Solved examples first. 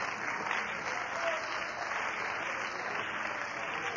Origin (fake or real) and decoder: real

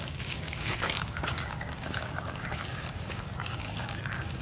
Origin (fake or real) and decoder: fake, codec, DAC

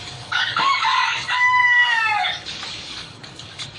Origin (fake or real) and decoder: fake, codec, DAC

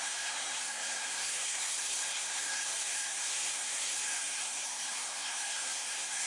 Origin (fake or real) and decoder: fake, codec, SNAC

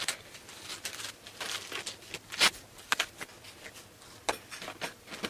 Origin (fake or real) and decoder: real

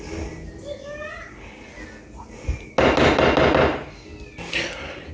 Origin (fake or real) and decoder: real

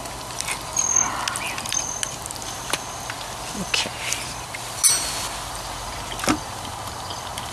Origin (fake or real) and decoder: real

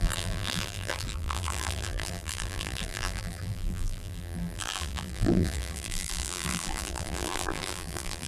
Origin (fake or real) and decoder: fake, vocoder, BigVGAN v2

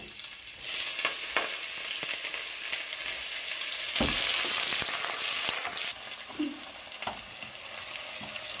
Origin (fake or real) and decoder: real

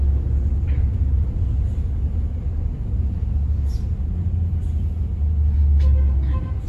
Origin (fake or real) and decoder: real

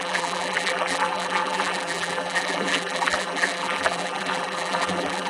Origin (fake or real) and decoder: fake, vocoder, BigVGAN v2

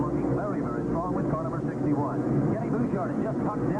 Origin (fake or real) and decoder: real